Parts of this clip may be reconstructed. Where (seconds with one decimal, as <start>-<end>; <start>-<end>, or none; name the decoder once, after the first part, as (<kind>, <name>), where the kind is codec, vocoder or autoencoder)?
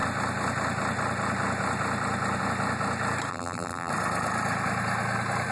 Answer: 3.3-3.9 (vocoder, BigVGAN v2)